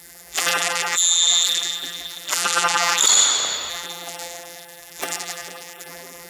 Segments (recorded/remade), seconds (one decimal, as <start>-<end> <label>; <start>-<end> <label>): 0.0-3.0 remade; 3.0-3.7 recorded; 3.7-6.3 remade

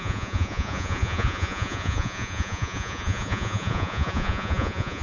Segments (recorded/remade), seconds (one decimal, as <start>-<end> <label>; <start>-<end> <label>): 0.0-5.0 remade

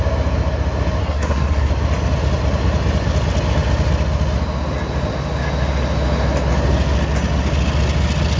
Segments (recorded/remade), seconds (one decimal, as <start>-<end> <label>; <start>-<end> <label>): 0.0-1.0 recorded; 1.0-1.7 remade; 1.7-8.4 recorded

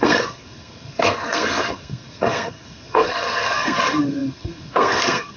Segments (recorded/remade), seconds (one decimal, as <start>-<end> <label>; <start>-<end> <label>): 0.0-5.4 remade